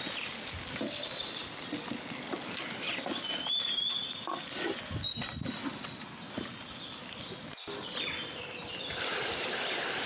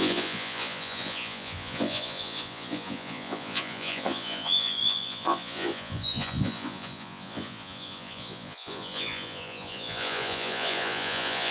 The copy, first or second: second